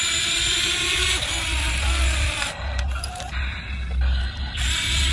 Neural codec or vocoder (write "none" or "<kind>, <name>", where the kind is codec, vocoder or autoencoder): none